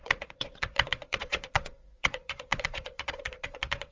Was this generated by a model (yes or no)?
yes